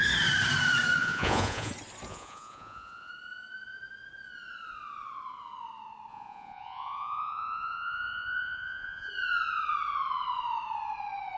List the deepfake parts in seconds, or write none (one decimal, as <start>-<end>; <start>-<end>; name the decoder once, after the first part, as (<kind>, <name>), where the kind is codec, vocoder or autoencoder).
1.0-1.7 (vocoder, Vocos); 2.1-3.1; 6.1-9.1